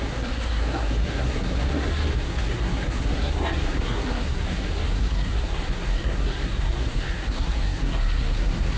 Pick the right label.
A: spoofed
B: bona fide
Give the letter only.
A